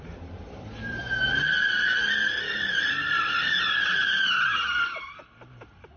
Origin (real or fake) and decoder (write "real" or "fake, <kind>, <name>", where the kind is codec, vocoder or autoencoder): fake, vocoder, BigVGAN v2